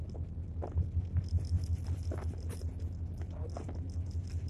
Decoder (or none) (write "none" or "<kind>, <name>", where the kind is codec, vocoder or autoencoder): none